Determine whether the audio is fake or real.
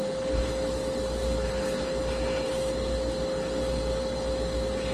real